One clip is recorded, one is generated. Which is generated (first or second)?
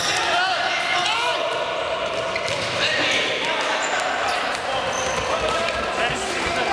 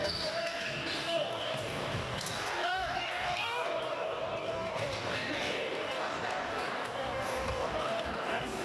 second